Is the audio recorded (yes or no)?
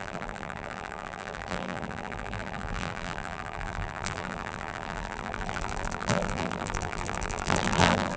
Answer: no